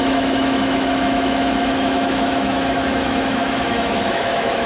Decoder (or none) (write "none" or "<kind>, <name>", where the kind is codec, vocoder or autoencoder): autoencoder, DAC-VAE